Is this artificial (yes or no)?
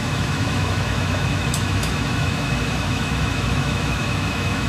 yes